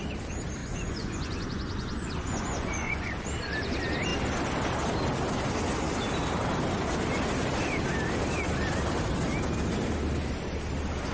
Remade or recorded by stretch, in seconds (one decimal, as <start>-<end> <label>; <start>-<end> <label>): 0.0-0.6 recorded; 0.6-3.1 remade; 3.1-11.1 recorded